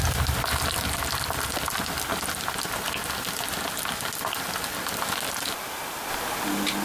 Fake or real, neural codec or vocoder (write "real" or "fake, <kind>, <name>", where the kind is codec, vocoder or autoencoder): real